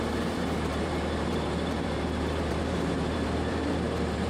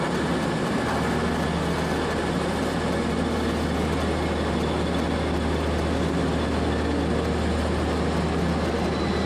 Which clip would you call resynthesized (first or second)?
first